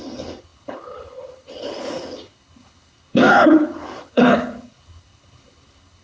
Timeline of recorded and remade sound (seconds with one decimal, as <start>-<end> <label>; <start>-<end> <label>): 0.0-6.0 remade